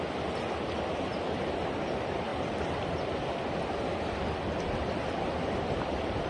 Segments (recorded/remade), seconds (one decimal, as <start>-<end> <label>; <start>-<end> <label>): 0.0-1.1 recorded; 1.1-1.7 remade; 1.7-6.3 recorded